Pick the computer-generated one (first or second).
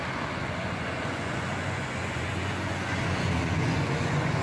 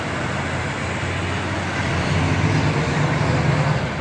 first